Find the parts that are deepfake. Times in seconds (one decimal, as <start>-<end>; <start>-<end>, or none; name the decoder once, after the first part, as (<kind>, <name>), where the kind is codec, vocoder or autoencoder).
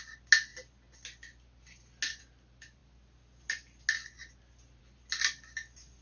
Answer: none